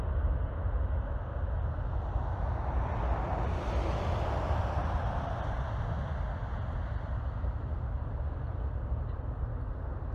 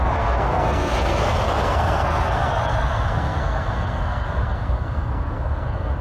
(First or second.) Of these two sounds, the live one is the first